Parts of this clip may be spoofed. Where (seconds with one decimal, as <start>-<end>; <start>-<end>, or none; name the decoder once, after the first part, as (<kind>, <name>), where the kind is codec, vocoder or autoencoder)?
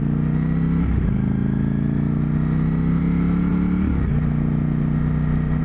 none